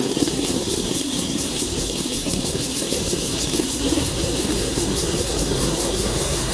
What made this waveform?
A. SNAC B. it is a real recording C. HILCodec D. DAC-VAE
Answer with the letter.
A